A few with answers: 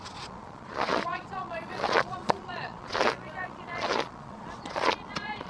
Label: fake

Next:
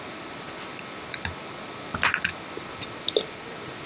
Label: real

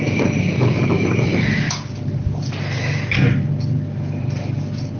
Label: real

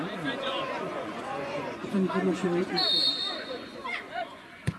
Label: fake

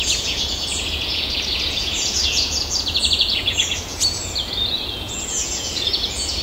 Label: fake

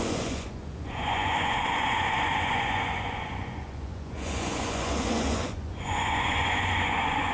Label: fake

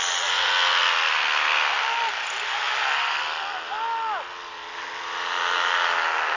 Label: real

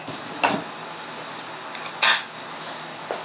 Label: real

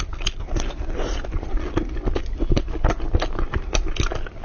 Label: real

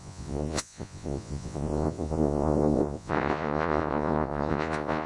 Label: fake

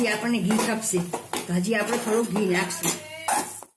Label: real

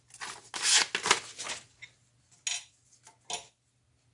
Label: real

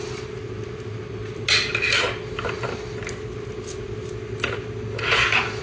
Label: real